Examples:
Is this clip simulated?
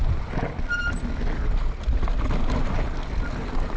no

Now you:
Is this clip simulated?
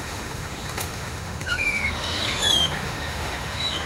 yes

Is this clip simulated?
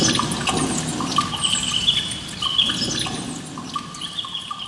no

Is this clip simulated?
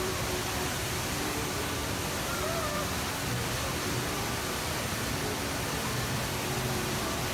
yes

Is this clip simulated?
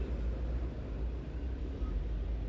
no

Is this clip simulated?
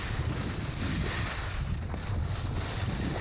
no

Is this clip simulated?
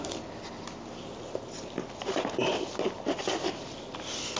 no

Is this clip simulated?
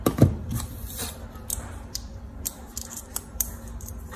yes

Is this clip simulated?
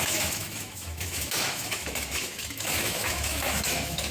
yes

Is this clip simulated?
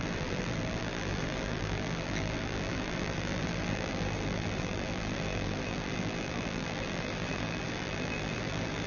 yes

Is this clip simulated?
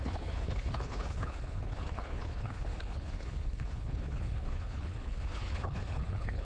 yes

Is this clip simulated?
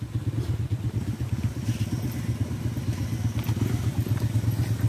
no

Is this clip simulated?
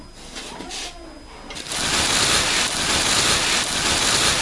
no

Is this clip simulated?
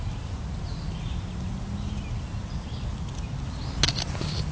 no